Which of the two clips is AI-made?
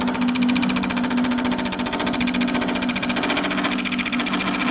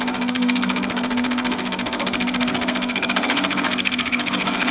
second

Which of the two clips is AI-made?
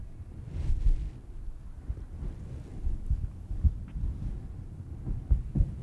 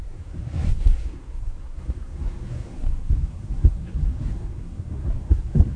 second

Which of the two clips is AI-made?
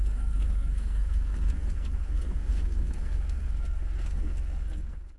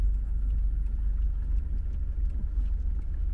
first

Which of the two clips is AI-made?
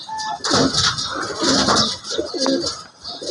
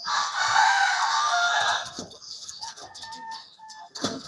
second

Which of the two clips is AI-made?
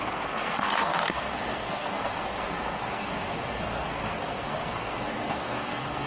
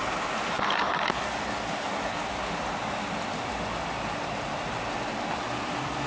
first